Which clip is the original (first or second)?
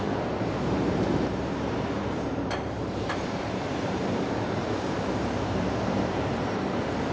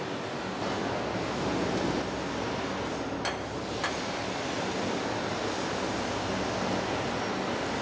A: second